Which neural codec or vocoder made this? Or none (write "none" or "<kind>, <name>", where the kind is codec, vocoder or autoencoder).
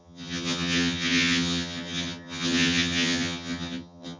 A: vocoder, HiFi-GAN